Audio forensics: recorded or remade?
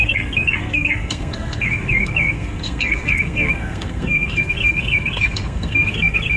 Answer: remade